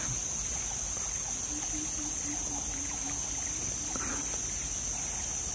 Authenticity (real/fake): real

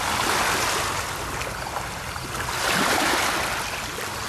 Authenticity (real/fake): real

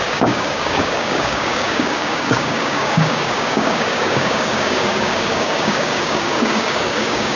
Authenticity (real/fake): fake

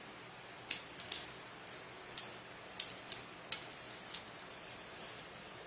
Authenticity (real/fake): real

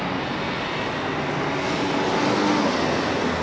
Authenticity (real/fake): real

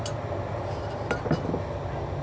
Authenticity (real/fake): real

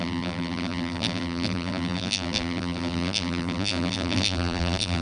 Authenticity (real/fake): fake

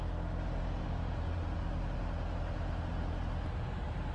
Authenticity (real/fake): real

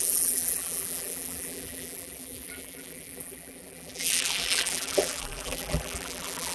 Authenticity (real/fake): fake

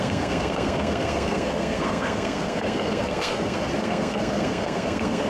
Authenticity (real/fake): fake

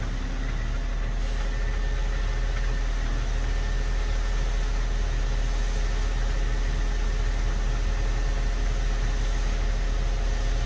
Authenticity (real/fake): real